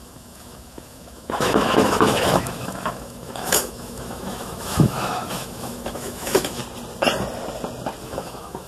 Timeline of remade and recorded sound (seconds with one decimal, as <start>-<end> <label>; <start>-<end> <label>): 0.0-6.6 remade; 6.6-8.0 recorded; 8.0-8.7 remade